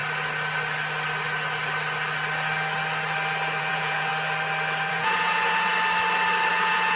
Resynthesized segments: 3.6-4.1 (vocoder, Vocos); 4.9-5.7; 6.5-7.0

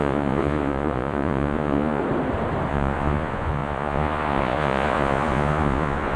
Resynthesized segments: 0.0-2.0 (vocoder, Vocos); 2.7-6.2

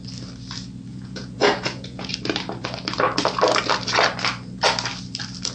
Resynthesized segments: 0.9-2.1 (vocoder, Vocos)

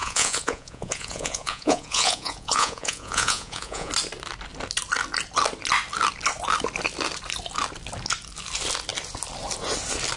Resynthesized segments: 0.0-3.9 (vocoder, Vocos)

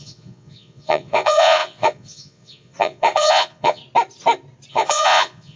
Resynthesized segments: 0.0-3.8 (vocoder, Vocos); 4.7-5.6

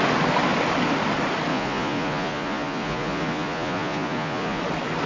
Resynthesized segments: 1.5-4.6 (vocoder, Vocos)